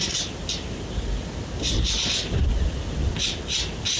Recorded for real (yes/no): yes